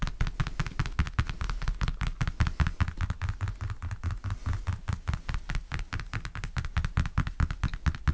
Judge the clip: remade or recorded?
recorded